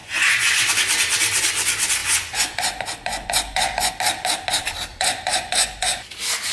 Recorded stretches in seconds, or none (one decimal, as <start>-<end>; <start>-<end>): 0.7-2.0; 3.9-4.9; 6.1-6.5